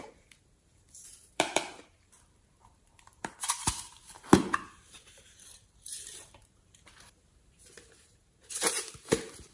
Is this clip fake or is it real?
fake